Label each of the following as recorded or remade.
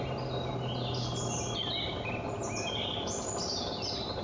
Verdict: recorded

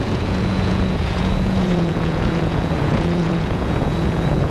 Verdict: remade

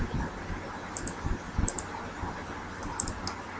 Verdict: recorded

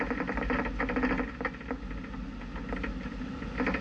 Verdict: recorded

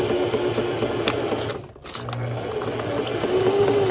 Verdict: recorded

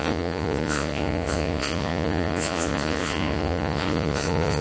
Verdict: remade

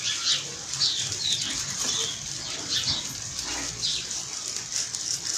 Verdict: recorded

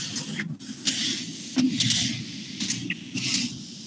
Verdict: recorded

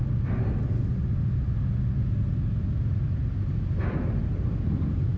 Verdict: recorded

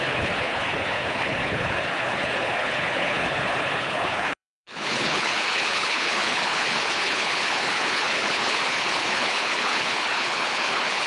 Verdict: remade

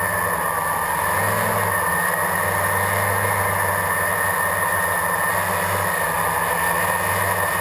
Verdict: recorded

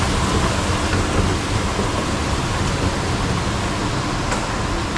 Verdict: recorded